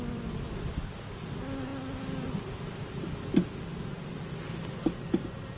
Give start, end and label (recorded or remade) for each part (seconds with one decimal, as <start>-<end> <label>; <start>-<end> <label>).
0.0-5.6 recorded